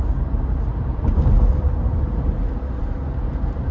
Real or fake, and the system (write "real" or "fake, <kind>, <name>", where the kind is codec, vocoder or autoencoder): fake, vocoder, BigVGAN v2